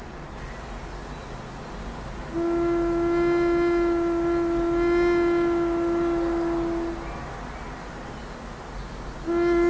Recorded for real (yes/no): yes